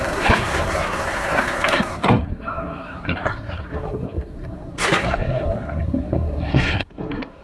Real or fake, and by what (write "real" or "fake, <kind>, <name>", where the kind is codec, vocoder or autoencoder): fake, codec, SNAC